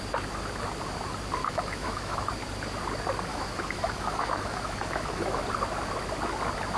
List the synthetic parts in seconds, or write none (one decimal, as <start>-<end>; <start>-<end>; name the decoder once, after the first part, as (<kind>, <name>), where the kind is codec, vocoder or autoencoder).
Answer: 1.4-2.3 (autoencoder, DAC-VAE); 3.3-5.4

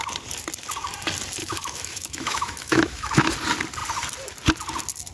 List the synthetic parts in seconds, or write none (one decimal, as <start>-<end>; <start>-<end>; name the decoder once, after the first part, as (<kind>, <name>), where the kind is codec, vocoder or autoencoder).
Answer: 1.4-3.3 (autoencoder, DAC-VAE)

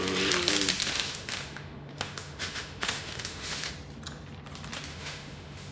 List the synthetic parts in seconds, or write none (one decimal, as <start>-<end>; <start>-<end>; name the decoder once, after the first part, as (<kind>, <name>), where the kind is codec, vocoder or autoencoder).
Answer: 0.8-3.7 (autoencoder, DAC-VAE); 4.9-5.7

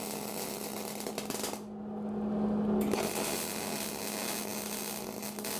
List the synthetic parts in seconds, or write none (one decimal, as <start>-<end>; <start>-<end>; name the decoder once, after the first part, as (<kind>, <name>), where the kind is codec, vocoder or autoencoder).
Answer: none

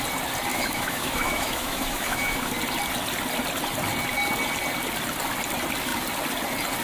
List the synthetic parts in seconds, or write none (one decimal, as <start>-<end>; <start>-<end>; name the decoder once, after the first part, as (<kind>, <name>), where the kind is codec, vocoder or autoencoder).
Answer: 0.5-2.5 (autoencoder, DAC-VAE)

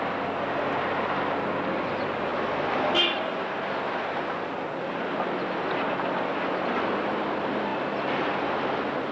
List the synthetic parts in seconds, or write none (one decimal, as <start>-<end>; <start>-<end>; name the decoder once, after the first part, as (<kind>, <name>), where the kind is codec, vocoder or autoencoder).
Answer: none

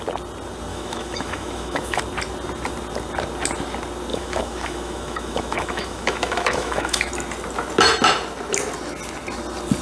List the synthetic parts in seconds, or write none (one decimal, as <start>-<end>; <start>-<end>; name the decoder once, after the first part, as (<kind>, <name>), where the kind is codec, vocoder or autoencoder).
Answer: 0.7-2.0 (autoencoder, DAC-VAE); 4.1-7.1